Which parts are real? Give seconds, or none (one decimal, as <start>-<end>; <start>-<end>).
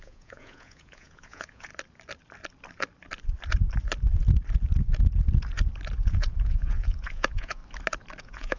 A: 1.7-6.0; 7.6-8.2